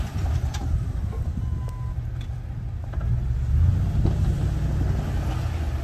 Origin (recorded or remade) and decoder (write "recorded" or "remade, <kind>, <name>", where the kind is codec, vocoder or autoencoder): recorded